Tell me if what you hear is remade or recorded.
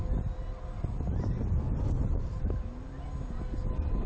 recorded